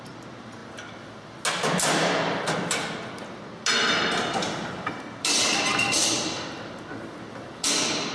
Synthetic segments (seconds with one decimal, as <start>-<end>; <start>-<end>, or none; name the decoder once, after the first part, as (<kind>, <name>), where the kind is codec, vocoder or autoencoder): none